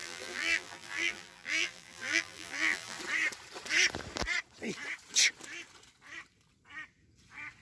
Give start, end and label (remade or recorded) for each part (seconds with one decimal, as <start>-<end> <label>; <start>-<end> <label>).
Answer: 0.0-3.0 remade; 3.0-7.6 recorded